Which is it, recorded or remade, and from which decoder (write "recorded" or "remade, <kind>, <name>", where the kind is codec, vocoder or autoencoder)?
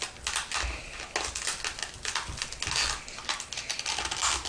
recorded